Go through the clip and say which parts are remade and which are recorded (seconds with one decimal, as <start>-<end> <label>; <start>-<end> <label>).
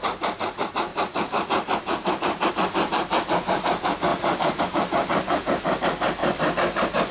0.0-7.1 remade